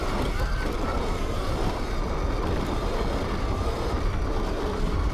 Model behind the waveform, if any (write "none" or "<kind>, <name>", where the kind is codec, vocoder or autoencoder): none